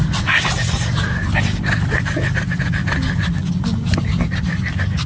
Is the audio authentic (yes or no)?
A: yes